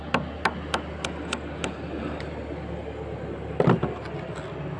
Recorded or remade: recorded